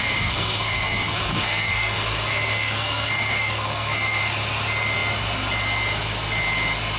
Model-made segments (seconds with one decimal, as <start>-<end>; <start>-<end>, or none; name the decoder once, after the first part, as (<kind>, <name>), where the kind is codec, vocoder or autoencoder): 0.0-4.2 (codec, SNAC)